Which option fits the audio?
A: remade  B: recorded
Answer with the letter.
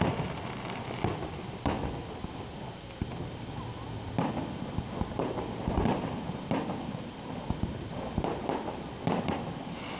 B